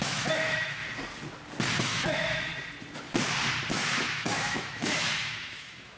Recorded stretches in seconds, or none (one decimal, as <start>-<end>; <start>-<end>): 0.8-1.8; 2.5-3.7